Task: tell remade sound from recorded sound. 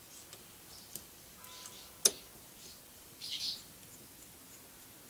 recorded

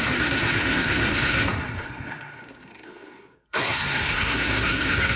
remade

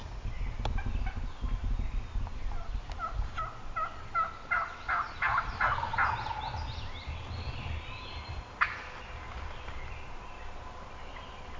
recorded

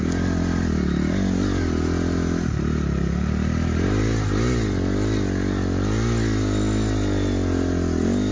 recorded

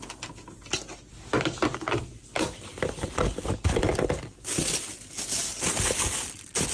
recorded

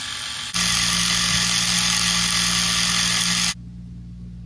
recorded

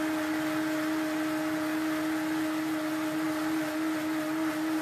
recorded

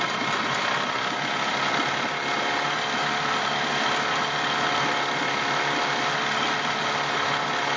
recorded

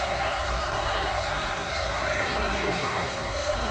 remade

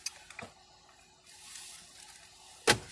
recorded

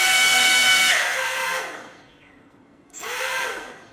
remade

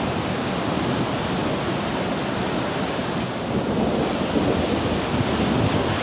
recorded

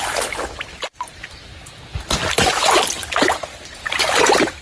recorded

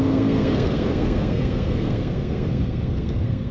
remade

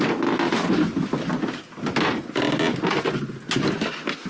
recorded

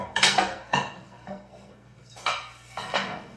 remade